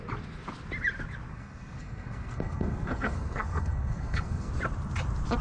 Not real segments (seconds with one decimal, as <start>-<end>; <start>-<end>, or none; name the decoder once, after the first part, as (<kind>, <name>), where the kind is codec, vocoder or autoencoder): 1.3-4.5 (codec, SNAC)